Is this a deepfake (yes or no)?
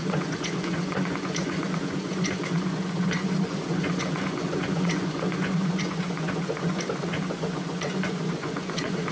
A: yes